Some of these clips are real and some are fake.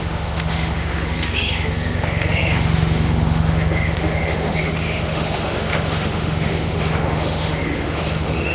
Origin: fake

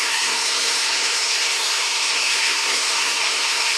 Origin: fake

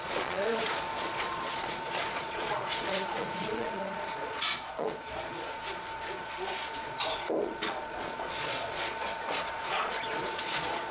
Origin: fake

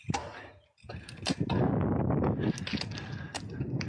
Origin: real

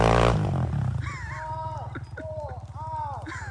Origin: real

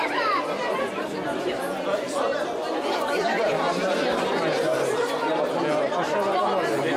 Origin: real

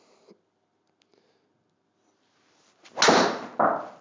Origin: real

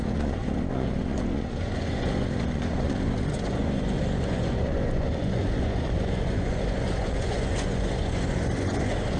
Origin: fake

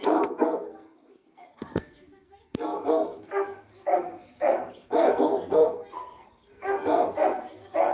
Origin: fake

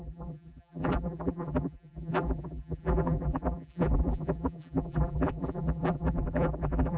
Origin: fake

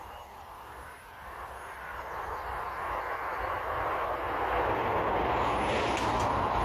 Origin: real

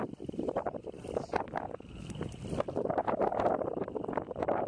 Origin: real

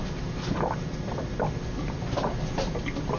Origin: real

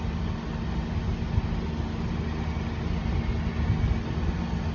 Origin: real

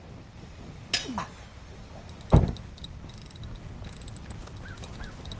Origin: real